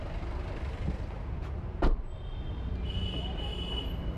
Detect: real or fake real